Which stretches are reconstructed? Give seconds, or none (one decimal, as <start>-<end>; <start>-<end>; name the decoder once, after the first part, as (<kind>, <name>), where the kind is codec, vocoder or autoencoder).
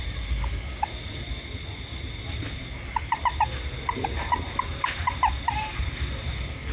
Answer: none